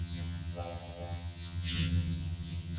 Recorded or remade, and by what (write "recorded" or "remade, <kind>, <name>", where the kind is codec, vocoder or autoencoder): remade, vocoder, HiFi-GAN